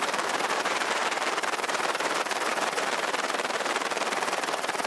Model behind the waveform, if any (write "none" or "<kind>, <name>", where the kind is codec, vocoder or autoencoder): vocoder, BigVGAN v2